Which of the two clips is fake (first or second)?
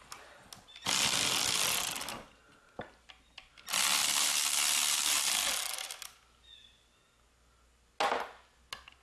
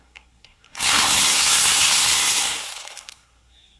second